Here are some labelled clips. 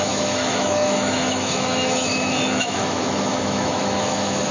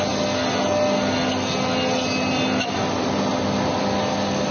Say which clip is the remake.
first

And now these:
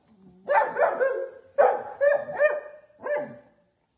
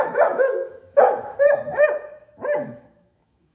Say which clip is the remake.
second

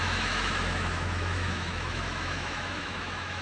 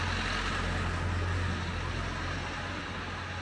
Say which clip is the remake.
first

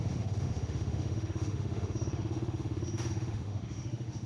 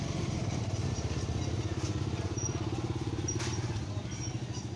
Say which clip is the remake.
first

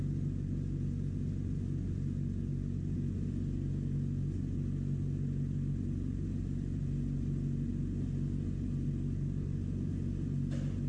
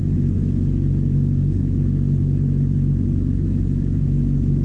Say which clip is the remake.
second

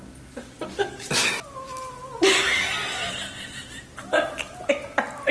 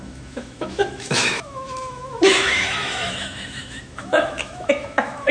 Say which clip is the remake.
second